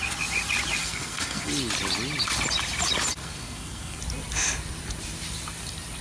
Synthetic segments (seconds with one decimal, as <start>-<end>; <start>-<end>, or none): 0.8-1.5; 3.2-4.0